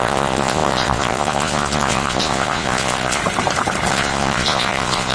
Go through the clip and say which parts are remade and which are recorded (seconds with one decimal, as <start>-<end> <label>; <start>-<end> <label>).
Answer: 0.0-3.2 remade; 3.2-3.9 recorded; 3.9-5.1 remade